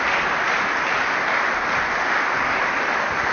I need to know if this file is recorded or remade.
recorded